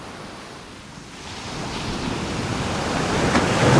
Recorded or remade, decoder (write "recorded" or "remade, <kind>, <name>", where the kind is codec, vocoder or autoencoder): recorded